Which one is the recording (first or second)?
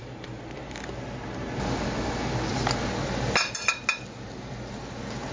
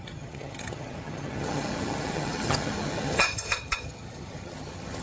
first